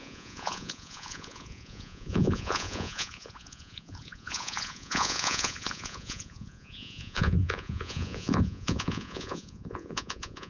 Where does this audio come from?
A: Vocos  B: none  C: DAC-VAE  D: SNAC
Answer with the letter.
A